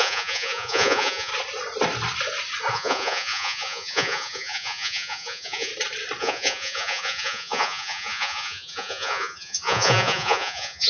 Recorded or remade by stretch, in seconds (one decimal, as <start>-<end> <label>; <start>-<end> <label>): 0.0-1.3 remade; 1.3-2.7 recorded; 2.7-5.7 remade; 5.7-6.2 recorded; 6.2-10.9 remade

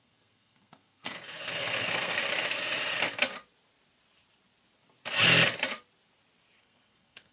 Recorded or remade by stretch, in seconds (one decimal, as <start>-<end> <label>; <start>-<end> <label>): 0.0-2.2 remade; 2.2-6.6 recorded; 6.6-7.3 remade

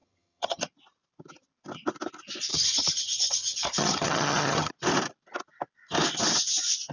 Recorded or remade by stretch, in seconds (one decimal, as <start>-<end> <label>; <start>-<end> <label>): 0.0-0.6 remade; 0.6-2.5 recorded; 2.5-4.7 remade; 4.7-6.9 recorded

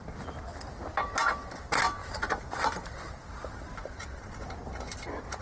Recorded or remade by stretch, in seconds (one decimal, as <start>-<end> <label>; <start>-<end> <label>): 0.0-2.0 recorded; 2.0-4.3 remade; 4.3-5.4 recorded

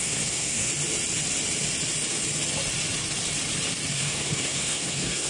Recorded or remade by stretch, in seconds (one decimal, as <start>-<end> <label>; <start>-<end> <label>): 0.0-0.7 remade; 0.7-3.9 recorded; 3.9-5.3 remade

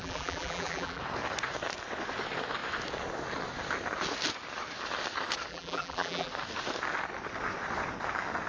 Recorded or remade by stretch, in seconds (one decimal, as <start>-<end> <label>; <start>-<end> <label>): 0.0-1.0 remade; 1.0-5.5 recorded; 5.5-6.3 remade; 6.3-8.5 recorded

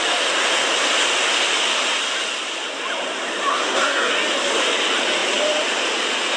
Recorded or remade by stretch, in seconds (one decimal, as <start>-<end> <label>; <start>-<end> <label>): 0.0-3.5 recorded; 3.5-4.1 remade; 4.1-6.4 recorded